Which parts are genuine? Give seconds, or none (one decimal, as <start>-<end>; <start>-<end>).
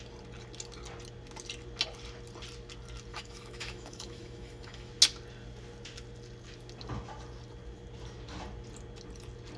0.0-3.1; 4.9-9.6